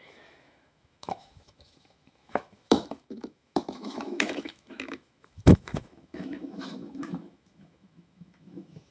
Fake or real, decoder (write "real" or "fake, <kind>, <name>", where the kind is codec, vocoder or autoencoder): fake, autoencoder, DAC-VAE